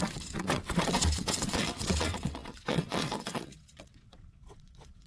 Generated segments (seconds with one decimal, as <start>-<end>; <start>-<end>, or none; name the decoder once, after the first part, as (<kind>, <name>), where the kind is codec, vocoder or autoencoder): 0.0-5.1 (vocoder, WaveNeXt)